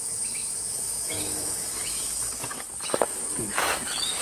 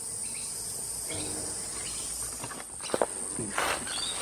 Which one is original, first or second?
second